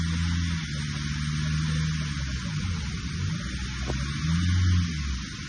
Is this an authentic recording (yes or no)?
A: yes